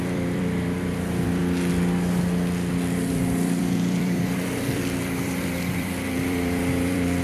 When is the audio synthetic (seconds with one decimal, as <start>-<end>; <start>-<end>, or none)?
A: 0.0-1.4; 3.1-7.2